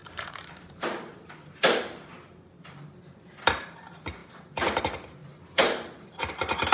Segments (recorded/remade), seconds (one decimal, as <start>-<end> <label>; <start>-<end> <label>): 0.0-6.7 remade